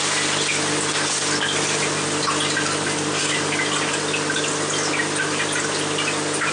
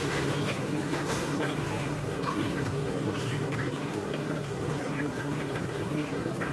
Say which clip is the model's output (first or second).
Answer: second